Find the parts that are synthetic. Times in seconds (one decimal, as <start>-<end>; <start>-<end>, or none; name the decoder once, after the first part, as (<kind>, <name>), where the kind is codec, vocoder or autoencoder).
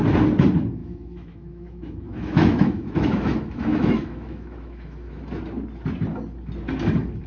0.8-5.2 (autoencoder, DAC-VAE)